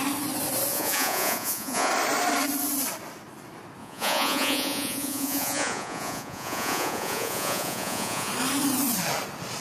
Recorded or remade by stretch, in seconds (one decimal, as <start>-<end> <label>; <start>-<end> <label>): 0.0-0.7 recorded; 0.7-1.9 remade; 1.9-3.8 recorded; 3.8-8.3 remade; 8.3-9.6 recorded